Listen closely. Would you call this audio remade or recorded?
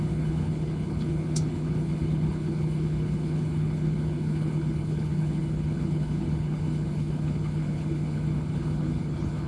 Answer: remade